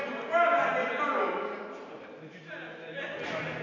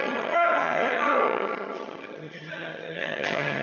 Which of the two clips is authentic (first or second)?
first